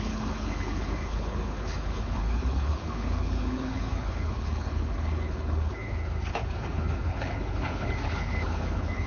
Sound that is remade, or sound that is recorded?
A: remade